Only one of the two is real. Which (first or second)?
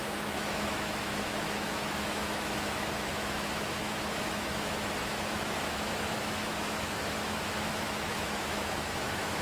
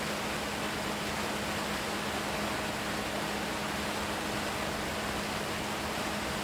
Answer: second